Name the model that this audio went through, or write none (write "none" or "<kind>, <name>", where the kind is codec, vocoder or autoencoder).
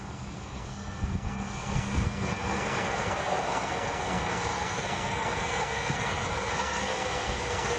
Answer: codec, SNAC